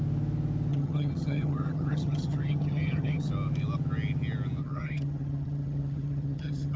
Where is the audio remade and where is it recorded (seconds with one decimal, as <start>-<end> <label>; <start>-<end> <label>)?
0.0-0.7 recorded; 0.7-3.3 remade; 3.3-4.6 recorded; 4.6-6.8 remade